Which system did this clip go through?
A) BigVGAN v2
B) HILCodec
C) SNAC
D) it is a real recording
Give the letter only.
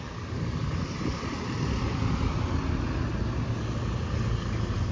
D